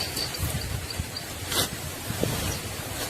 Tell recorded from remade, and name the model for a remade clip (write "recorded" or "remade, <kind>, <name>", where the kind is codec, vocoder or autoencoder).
recorded